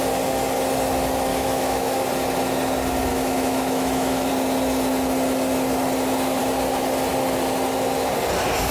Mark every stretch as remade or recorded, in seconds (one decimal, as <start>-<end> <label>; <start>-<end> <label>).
0.0-1.3 recorded; 1.3-2.0 remade; 2.0-3.1 recorded; 3.1-4.3 remade; 4.3-8.7 recorded